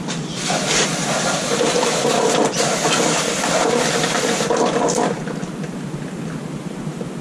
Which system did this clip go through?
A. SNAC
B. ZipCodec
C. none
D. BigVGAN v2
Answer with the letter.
D